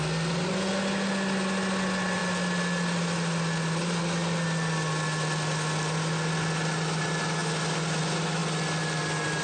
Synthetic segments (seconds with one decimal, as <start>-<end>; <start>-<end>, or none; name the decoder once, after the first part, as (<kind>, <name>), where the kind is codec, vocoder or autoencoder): none